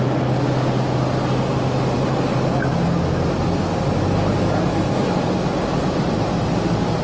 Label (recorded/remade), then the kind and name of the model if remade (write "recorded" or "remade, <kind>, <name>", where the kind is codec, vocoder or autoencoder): recorded